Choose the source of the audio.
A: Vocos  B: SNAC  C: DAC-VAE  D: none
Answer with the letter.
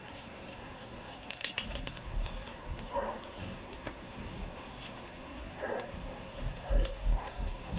B